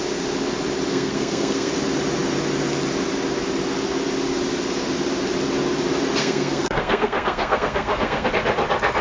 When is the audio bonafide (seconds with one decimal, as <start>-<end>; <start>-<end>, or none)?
0.0-0.9; 1.7-6.2; 8.3-9.0